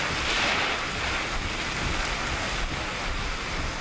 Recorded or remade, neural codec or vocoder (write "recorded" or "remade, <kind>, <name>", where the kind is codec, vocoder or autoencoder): recorded